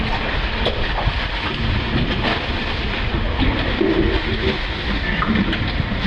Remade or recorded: recorded